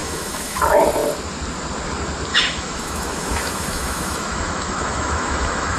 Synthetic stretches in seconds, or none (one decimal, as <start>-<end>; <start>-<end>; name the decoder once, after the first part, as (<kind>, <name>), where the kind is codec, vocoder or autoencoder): 0.0-0.6 (autoencoder, DAC-VAE); 2.3-5.8